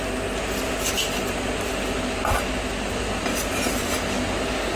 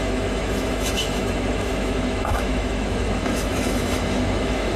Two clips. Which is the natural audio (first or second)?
first